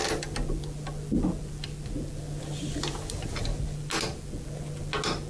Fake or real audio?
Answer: real